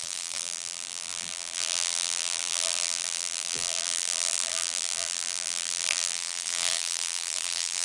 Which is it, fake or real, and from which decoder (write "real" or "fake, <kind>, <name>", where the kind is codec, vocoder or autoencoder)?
fake, vocoder, BigVGAN v2